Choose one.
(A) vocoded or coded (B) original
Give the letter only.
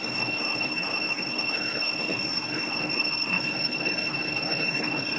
A